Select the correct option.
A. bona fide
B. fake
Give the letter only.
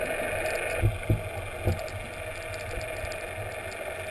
A